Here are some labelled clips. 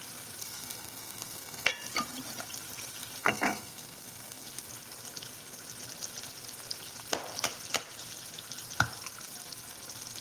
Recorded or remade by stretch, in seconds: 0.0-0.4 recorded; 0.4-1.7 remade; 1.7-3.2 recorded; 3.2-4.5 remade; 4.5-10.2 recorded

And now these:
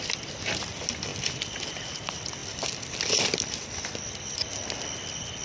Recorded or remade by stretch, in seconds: 0.0-5.4 recorded

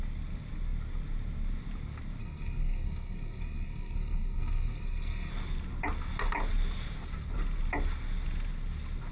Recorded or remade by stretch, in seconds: 0.0-2.2 recorded; 2.2-5.3 remade; 5.3-9.1 recorded

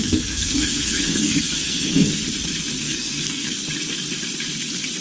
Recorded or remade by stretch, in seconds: 0.0-2.2 remade; 2.2-2.8 recorded; 2.8-3.6 remade; 3.6-5.0 recorded

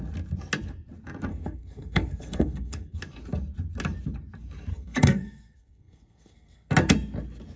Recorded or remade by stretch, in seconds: 0.0-1.3 recorded; 1.3-3.0 remade; 3.0-4.7 recorded; 4.7-6.7 remade; 6.7-7.6 recorded

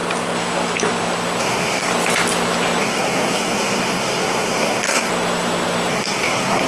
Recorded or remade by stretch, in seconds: 0.0-1.4 recorded; 1.4-1.9 remade; 1.9-2.8 recorded; 2.8-5.1 remade; 5.1-5.9 recorded; 5.9-6.7 remade

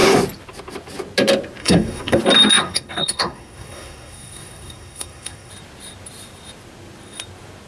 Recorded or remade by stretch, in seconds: 0.0-1.6 recorded; 1.6-2.2 remade; 2.2-2.6 recorded; 2.6-5.5 remade; 5.5-7.7 recorded

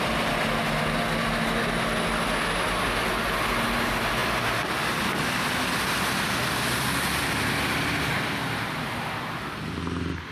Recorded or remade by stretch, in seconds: 0.0-10.3 recorded